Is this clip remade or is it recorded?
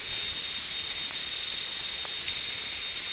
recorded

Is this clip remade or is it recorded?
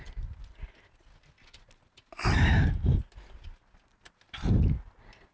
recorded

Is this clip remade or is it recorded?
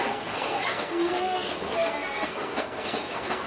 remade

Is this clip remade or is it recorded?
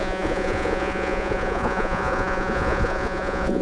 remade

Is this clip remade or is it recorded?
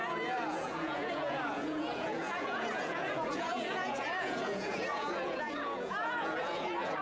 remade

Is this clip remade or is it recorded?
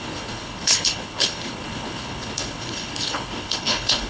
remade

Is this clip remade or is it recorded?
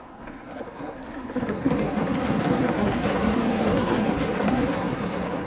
remade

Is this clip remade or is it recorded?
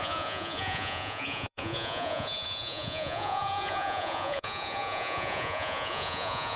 remade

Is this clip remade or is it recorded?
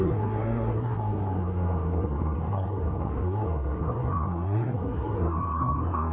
remade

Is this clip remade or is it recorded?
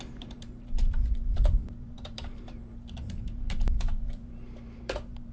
remade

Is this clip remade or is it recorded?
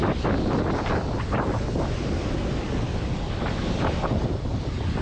recorded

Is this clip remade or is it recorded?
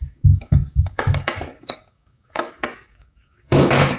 remade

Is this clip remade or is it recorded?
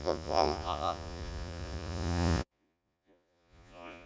remade